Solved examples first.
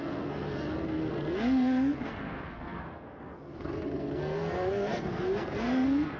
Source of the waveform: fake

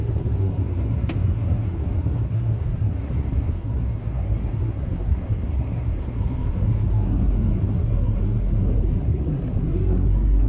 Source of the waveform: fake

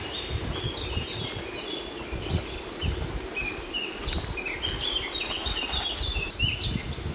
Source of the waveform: real